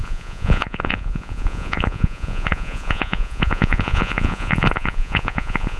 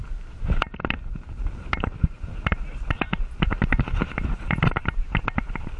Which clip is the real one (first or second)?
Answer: second